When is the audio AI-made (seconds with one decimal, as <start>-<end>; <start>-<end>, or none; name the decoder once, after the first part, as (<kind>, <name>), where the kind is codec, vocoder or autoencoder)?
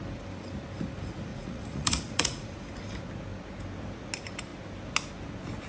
1.3-2.6 (vocoder, Vocos)